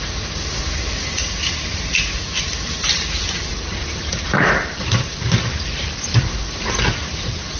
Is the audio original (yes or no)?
no